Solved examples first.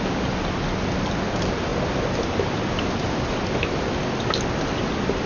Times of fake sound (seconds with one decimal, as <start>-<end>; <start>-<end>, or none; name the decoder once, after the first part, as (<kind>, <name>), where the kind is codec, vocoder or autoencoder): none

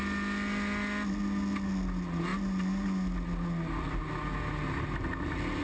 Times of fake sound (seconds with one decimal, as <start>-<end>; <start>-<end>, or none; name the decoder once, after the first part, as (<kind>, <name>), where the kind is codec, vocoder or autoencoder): none

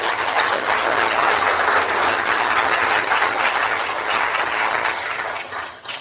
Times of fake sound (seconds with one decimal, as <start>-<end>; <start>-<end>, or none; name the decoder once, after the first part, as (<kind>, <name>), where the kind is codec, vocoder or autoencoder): 0.0-1.5 (vocoder, HiFi-GAN); 2.1-6.0

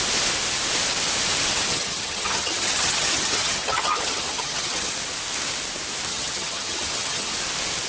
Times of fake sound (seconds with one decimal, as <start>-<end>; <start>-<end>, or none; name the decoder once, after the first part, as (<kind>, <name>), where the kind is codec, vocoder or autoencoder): 1.7-4.9 (vocoder, HiFi-GAN); 6.1-7.3